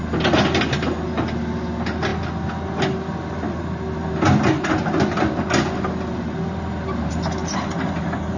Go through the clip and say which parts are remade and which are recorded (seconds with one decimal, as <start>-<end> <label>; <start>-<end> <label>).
0.0-8.4 recorded